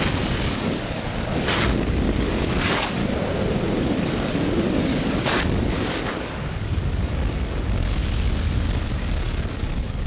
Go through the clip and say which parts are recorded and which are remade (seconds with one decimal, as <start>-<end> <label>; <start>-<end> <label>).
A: 0.0-3.0 remade; 3.0-3.8 recorded; 3.8-10.1 remade